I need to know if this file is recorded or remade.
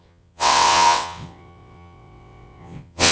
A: remade